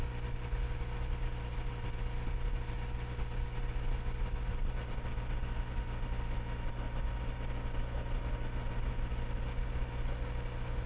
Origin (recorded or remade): recorded